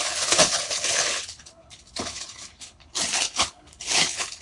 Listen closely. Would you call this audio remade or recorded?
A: remade